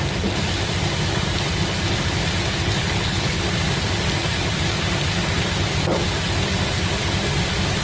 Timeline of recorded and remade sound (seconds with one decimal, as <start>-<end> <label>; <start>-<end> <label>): 0.0-2.8 recorded; 2.8-3.4 remade; 3.4-7.8 recorded